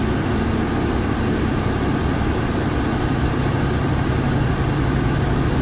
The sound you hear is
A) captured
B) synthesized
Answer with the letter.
A